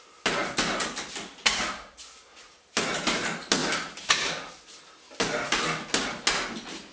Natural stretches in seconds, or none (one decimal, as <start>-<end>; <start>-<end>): 0.0-6.9